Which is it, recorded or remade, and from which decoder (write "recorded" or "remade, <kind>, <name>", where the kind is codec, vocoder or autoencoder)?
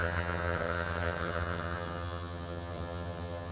remade, vocoder, HiFi-GAN